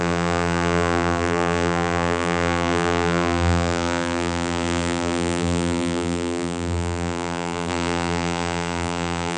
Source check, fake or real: fake